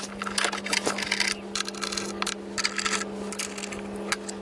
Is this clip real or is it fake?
real